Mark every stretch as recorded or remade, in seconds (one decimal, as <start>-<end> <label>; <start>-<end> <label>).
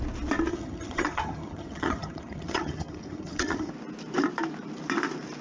0.0-0.5 recorded; 0.5-3.7 remade; 3.7-5.4 recorded